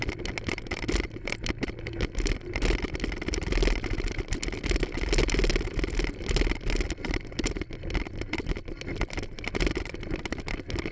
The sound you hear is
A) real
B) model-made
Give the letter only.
A